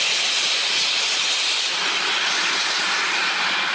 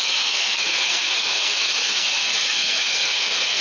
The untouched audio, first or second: first